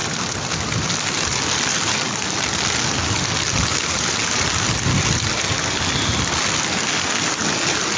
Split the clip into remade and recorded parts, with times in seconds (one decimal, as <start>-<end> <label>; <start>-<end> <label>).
0.0-8.0 recorded